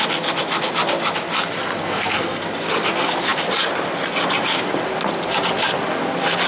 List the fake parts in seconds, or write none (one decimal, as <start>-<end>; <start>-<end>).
1.8-2.4

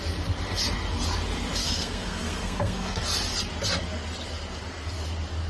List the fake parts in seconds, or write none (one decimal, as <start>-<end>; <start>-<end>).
1.6-3.0

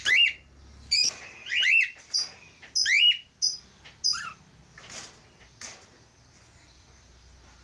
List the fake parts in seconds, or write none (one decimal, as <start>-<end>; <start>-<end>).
none